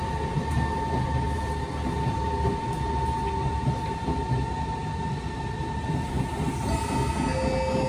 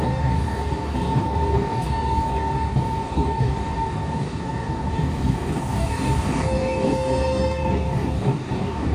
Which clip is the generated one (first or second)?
second